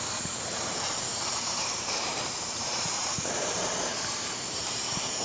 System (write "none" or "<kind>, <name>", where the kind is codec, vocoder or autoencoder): vocoder, BigVGAN v2